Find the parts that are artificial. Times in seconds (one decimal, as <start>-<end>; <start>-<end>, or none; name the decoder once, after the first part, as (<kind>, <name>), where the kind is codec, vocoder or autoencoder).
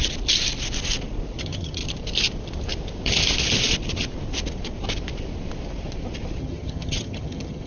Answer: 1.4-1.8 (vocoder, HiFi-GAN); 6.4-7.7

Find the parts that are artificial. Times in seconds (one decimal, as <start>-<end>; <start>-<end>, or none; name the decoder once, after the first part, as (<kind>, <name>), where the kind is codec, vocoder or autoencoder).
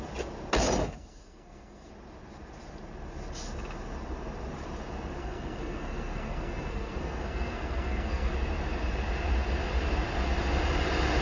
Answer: 0.8-1.9 (codec, SNAC); 5.2-8.3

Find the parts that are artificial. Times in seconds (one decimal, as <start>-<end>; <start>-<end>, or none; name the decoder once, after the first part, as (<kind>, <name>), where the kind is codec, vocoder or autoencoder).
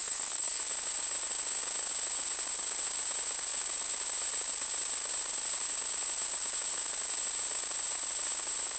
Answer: 0.0-0.6 (codec, SNAC)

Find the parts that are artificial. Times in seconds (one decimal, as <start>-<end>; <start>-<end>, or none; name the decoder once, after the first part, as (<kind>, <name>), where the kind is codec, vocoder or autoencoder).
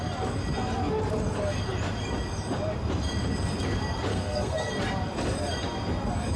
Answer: 4.1-4.7 (codec, SNAC)